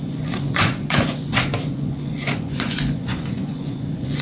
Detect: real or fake fake